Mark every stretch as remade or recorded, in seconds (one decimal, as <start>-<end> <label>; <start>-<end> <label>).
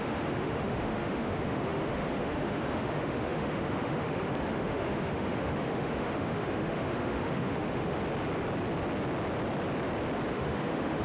0.0-8.0 remade; 8.0-10.3 recorded; 10.3-11.0 remade